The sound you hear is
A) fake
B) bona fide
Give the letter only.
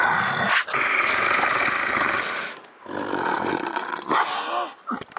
B